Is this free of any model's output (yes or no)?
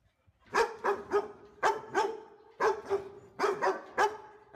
yes